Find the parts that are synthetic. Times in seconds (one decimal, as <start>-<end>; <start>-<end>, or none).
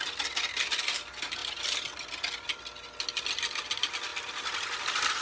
none